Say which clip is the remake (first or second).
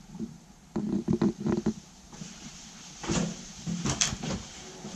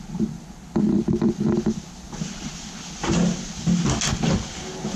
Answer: first